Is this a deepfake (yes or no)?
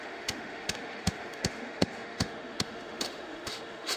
yes